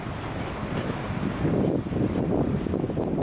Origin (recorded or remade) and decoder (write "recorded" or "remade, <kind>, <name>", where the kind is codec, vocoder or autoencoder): recorded